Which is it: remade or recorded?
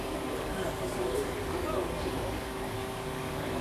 remade